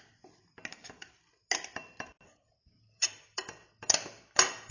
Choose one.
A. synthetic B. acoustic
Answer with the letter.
B